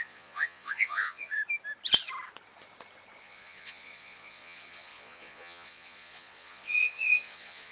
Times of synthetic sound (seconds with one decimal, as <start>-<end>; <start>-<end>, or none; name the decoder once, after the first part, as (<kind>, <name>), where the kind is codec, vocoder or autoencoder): 0.0-1.4 (vocoder, Vocos); 3.2-7.7